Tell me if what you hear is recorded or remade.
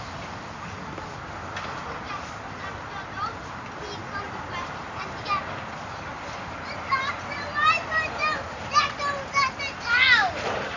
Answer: recorded